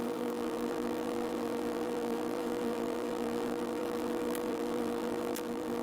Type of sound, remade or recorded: remade